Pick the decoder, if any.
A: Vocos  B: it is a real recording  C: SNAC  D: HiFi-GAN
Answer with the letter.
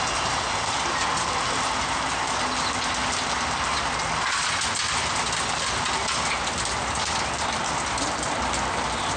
B